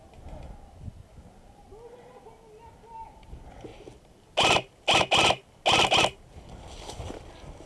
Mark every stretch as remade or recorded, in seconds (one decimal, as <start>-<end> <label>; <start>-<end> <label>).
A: 0.0-7.7 recorded